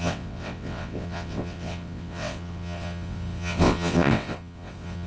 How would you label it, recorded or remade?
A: remade